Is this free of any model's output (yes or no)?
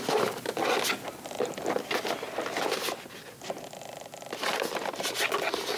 yes